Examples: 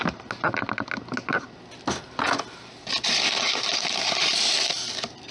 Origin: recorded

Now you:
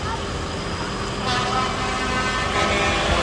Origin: recorded